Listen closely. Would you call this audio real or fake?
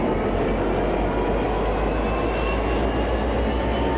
real